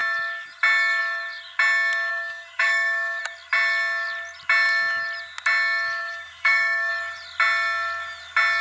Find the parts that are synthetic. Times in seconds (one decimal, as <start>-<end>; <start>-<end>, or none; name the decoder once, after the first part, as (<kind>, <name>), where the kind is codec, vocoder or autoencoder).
2.1-3.2 (autoencoder, DAC-VAE); 6.0-6.9